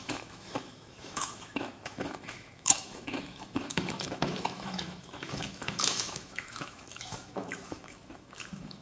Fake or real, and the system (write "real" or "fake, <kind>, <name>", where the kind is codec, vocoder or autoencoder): fake, autoencoder, DAC-VAE